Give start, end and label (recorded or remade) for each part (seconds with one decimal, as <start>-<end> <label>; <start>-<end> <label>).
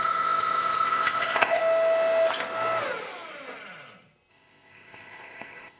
0.0-1.6 remade; 1.6-4.3 recorded; 4.3-5.8 remade